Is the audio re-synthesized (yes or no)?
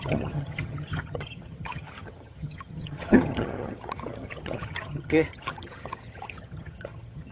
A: yes